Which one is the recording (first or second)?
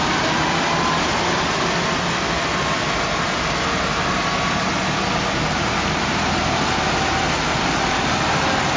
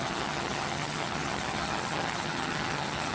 first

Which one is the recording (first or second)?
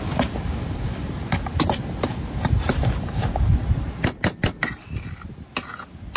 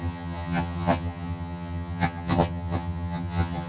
first